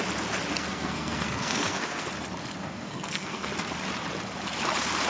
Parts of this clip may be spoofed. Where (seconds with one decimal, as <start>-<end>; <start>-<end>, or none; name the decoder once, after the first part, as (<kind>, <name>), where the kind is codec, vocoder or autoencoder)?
0.5-2.1 (codec, SNAC); 2.6-3.5